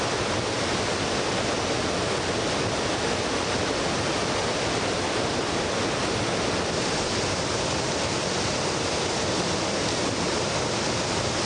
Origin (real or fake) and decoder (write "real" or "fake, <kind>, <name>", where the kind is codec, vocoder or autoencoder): real